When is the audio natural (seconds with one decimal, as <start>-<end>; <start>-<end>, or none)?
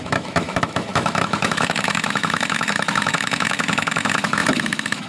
none